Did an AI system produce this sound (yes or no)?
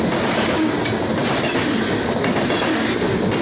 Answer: no